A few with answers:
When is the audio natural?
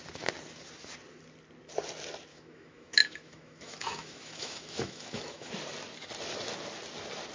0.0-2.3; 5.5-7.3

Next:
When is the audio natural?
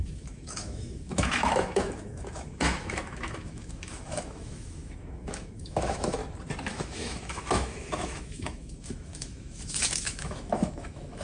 6.2-6.7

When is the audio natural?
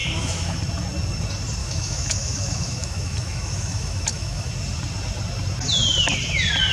0.6-1.6; 4.5-6.7